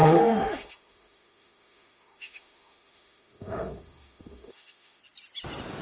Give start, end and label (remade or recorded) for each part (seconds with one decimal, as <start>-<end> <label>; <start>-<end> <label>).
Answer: 0.0-5.0 remade; 5.0-5.8 recorded